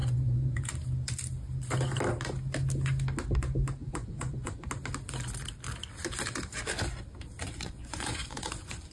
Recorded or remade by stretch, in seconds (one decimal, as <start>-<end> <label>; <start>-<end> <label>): 0.0-0.7 remade; 0.7-3.8 recorded; 3.8-4.7 remade; 4.7-7.4 recorded; 7.4-8.9 remade